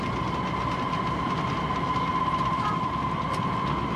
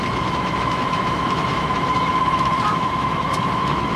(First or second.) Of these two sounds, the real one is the first